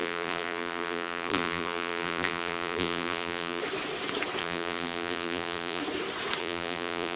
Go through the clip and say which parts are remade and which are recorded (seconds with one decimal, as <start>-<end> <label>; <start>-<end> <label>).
0.0-3.6 remade; 3.6-4.4 recorded; 4.4-5.8 remade; 5.8-6.4 recorded; 6.4-7.2 remade

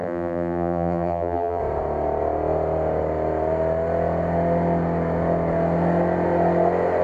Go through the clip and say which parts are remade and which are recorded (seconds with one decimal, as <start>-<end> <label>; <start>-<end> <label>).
0.0-1.6 remade; 1.6-7.0 recorded

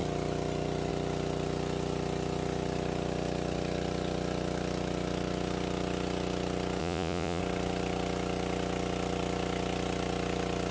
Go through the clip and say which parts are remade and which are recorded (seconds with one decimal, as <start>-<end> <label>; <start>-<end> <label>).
0.0-6.8 recorded; 6.8-7.4 remade; 7.4-10.7 recorded

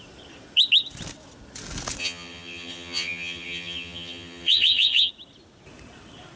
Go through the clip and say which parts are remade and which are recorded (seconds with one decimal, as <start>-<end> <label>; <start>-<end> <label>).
0.0-2.0 recorded; 2.0-5.1 remade; 5.1-6.4 recorded

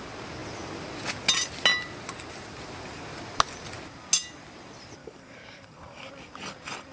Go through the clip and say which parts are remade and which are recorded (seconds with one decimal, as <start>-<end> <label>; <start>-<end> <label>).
0.0-5.0 recorded; 5.0-6.1 remade; 6.1-6.9 recorded

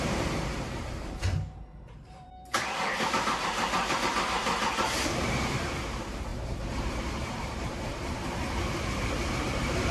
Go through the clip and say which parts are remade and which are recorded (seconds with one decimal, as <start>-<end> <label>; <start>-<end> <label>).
0.0-9.9 remade